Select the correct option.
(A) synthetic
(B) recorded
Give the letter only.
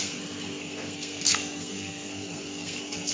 A